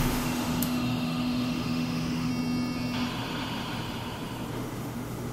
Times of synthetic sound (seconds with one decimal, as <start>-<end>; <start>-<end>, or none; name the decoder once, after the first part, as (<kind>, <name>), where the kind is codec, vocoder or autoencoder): 0.0-2.3 (autoencoder, DAC-VAE); 4.5-5.3